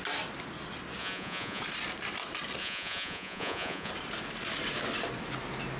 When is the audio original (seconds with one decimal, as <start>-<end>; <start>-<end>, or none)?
0.0-1.0; 1.6-2.6; 3.9-5.8